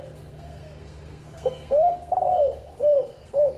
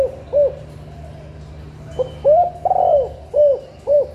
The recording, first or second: second